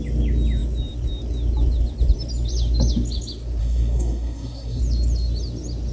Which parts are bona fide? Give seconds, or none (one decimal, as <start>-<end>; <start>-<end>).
0.0-3.6; 4.8-5.9